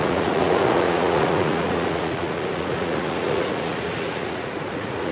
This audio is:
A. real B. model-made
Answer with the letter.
B